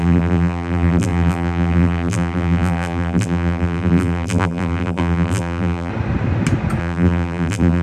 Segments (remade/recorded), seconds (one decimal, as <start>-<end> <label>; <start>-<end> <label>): 0.0-5.9 remade; 5.9-6.8 recorded; 6.8-7.8 remade